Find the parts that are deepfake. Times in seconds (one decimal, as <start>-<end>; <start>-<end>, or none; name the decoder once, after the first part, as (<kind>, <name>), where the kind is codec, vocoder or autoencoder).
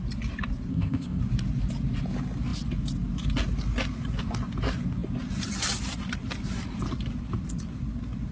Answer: 0.7-1.2 (codec, ZipCodec)